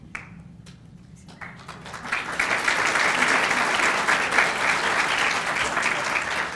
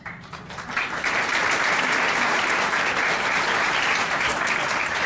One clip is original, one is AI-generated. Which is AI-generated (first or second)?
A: second